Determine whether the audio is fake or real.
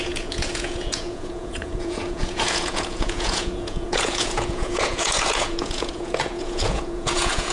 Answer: fake